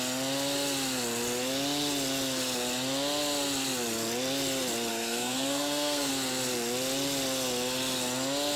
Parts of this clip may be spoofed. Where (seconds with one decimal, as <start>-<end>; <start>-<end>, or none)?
4.9-6.1